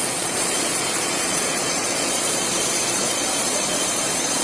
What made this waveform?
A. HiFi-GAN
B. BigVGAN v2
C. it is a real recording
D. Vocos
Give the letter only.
D